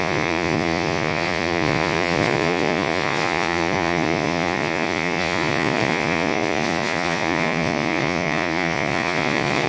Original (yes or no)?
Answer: no